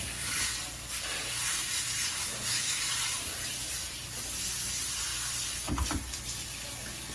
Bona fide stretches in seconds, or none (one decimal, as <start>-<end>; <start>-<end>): 0.0-2.2; 2.8-7.1